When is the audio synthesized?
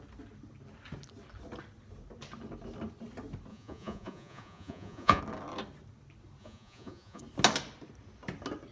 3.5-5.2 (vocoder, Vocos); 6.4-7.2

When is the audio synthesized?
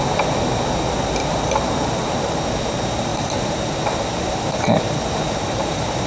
1.2-2.6 (vocoder, BigVGAN v2); 3.1-6.1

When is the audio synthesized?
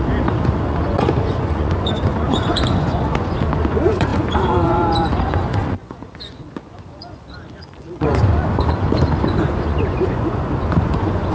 0.0-11.3 (vocoder, Vocos)